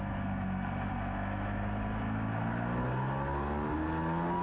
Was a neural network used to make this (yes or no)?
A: no